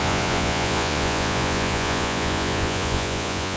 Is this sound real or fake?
fake